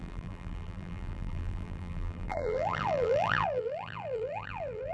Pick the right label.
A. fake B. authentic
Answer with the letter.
A